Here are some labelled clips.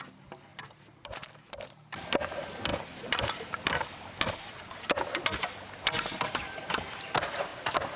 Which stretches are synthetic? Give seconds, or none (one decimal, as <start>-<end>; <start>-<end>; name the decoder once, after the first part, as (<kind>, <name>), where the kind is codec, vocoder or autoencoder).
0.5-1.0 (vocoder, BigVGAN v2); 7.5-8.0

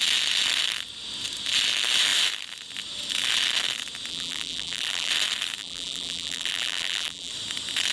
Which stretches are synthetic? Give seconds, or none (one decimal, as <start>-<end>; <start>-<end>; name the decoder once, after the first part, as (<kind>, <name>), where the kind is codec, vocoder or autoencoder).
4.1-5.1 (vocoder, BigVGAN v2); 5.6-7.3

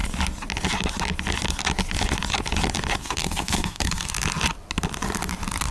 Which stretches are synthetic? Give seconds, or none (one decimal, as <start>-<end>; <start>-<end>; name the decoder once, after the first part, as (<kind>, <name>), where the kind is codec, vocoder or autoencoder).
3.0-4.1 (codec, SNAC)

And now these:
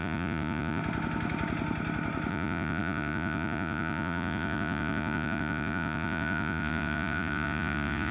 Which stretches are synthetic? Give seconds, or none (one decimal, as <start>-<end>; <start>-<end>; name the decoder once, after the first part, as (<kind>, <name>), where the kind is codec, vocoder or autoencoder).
0.0-0.8 (vocoder, Vocos); 2.3-8.1

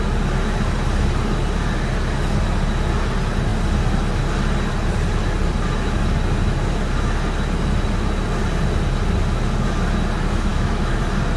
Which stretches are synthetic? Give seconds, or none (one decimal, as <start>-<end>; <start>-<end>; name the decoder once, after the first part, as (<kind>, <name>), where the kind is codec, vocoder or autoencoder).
10.5-11.0 (autoencoder, DAC-VAE)

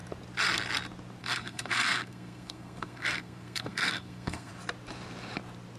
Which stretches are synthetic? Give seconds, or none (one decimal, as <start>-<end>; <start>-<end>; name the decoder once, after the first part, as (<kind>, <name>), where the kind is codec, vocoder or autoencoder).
1.2-4.5 (codec, SNAC)